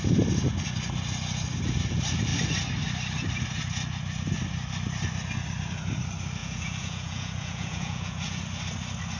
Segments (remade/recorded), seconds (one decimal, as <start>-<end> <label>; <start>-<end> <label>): 0.0-6.4 recorded; 6.4-8.4 remade; 8.4-9.2 recorded